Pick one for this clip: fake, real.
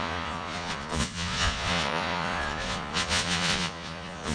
fake